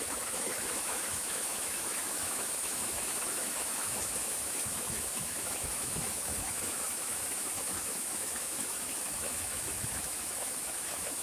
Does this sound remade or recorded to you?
remade